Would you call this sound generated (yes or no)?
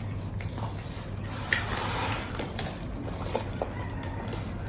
yes